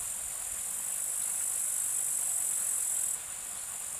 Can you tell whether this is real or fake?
real